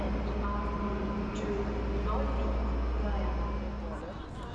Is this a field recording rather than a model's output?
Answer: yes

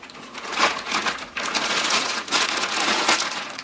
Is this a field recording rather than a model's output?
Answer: no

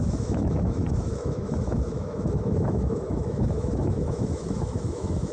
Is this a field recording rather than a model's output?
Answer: no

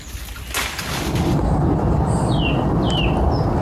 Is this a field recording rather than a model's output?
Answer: yes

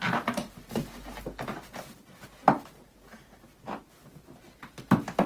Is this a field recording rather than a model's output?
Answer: yes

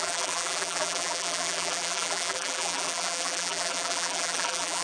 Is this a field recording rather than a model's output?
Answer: no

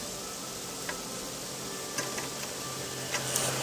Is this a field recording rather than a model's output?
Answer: yes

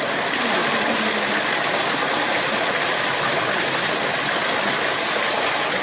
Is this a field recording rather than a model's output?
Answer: yes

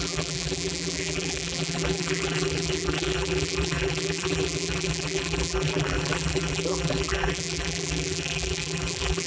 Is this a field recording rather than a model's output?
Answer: no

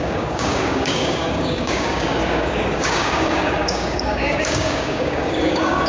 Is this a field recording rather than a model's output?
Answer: no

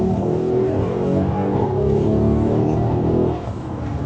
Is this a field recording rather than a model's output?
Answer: no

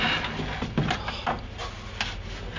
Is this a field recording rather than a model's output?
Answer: yes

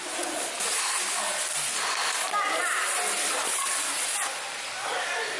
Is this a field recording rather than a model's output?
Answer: yes